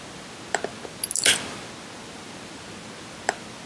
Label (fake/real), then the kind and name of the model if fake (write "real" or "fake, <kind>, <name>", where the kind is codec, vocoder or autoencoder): real